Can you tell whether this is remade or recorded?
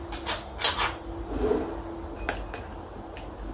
recorded